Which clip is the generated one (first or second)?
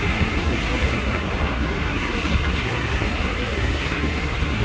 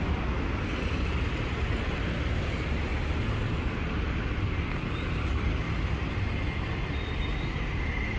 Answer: first